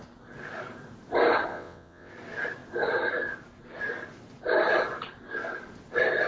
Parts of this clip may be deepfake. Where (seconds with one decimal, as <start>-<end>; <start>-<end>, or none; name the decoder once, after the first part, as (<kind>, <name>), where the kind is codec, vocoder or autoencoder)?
1.5-2.1 (vocoder, WaveNeXt)